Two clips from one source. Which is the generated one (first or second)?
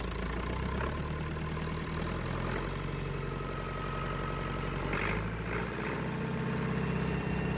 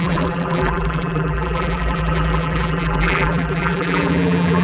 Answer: second